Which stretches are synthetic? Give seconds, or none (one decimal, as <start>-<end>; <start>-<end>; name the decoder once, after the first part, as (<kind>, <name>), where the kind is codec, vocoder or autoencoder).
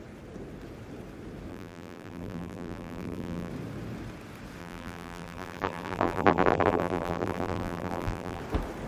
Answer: 1.5-3.5 (vocoder, BigVGAN v2); 4.6-8.4